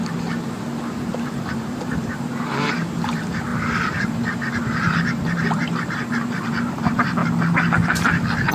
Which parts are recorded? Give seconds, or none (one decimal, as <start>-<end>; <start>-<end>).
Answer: 0.0-0.9; 7.2-8.5